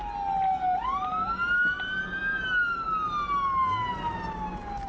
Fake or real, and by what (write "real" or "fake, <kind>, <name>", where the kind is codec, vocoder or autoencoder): real